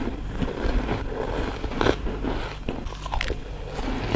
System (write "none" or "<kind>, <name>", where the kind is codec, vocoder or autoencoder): none